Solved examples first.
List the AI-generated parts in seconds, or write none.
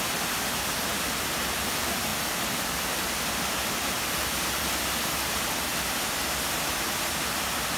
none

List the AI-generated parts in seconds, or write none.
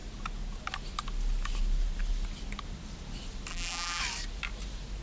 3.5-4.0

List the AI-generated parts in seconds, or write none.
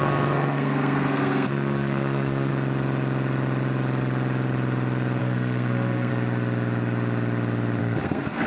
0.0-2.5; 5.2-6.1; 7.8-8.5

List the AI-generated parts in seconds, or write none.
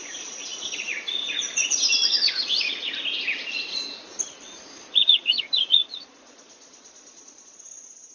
0.0-2.9; 5.0-8.1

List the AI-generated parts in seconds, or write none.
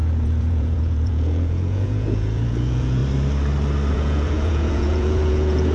0.0-3.0; 3.9-5.7